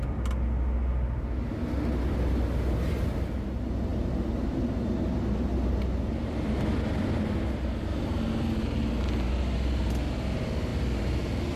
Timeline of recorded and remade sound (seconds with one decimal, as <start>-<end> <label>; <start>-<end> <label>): 0.0-11.6 recorded